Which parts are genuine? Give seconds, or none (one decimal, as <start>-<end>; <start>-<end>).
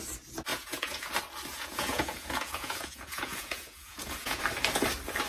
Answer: 0.0-0.5; 1.1-1.5; 4.4-5.3